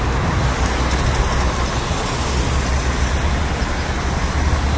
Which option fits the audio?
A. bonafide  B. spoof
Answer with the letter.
A